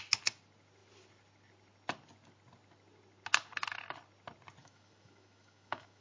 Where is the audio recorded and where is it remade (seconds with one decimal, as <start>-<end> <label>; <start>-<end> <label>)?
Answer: 0.0-4.6 recorded; 4.6-6.0 remade